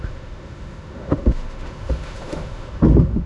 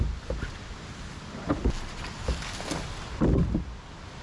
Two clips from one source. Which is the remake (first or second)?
first